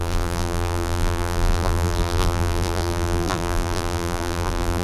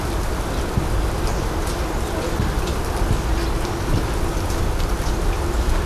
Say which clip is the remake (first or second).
first